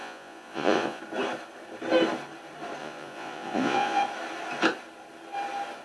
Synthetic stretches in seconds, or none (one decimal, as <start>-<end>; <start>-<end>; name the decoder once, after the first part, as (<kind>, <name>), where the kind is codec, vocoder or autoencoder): 0.0-1.0 (vocoder, Vocos); 2.8-4.0

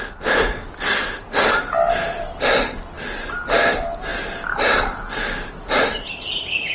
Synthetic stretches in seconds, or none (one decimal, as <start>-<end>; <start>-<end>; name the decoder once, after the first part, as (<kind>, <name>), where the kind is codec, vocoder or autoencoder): none

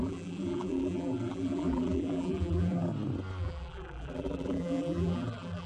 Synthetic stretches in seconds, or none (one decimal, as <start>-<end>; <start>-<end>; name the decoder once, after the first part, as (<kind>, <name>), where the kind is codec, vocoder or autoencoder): 0.0-2.9 (vocoder, BigVGAN v2); 3.4-5.7

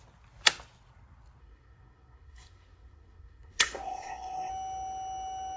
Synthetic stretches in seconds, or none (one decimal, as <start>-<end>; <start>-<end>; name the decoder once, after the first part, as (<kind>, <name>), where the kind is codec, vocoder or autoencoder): 1.4-4.5 (codec, SNAC)

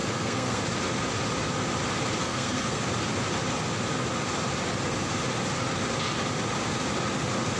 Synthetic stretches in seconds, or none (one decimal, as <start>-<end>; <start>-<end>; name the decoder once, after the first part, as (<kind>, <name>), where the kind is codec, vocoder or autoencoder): 0.0-0.6 (codec, SNAC); 2.2-2.8